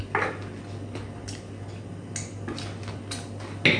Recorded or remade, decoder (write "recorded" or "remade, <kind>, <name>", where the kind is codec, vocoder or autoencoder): recorded